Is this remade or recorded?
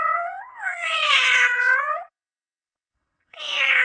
remade